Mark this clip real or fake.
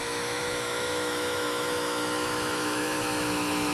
fake